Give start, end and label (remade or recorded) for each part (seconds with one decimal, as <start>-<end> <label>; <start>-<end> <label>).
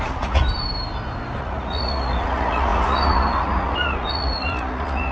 0.0-0.4 remade; 0.4-1.4 recorded; 1.4-5.1 remade